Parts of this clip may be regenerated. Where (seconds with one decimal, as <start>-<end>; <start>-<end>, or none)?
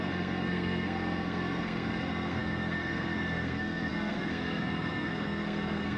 0.0-6.0